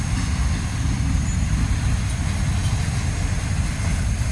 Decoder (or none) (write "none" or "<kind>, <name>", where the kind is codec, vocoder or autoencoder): none